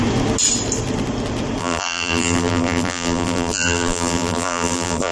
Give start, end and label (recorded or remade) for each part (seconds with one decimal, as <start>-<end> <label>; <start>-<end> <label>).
0.0-1.6 recorded; 1.6-5.1 remade